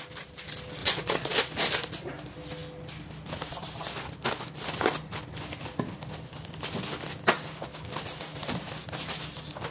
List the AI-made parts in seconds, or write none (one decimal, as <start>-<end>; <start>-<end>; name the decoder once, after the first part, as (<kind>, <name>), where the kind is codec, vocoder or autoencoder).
0.8-1.4 (vocoder, Vocos)